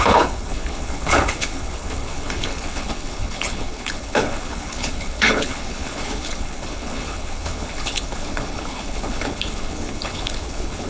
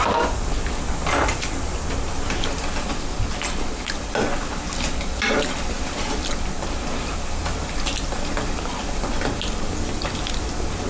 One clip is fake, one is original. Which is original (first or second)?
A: second